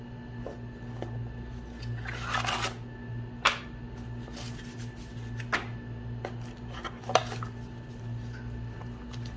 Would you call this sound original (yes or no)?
yes